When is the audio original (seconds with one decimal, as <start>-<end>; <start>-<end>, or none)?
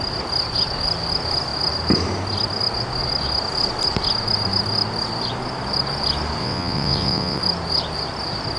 0.0-6.4; 7.4-8.6